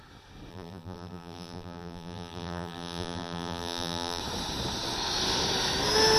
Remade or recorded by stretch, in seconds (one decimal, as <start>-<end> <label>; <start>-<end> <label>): 0.0-0.5 recorded; 0.5-4.2 remade; 4.2-6.2 recorded